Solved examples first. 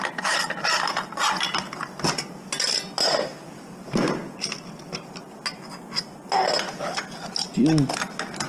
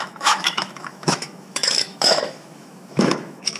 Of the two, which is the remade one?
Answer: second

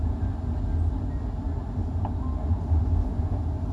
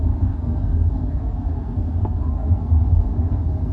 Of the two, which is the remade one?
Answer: second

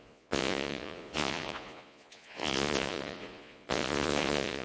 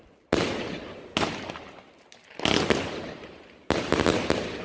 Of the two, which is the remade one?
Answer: first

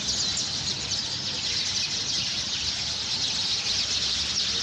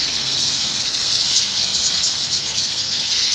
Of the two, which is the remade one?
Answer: second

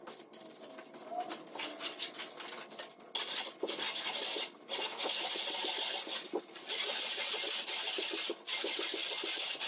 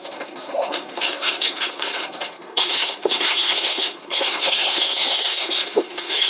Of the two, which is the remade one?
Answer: second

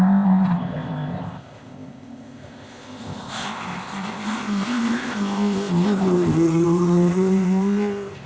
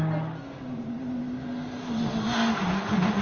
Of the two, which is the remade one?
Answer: first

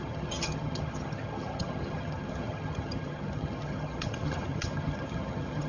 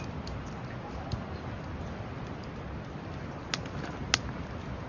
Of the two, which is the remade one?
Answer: first